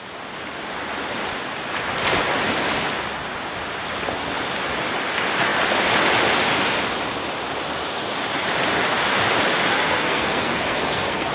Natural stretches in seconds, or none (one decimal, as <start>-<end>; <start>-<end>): 0.0-9.7